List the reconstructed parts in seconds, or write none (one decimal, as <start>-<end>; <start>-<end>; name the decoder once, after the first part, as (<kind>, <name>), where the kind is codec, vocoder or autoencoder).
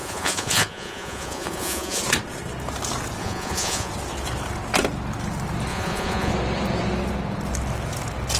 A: 0.0-2.0 (vocoder, Vocos); 3.2-3.9; 5.7-6.3